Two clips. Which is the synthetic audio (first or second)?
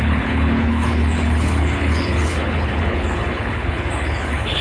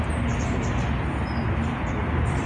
first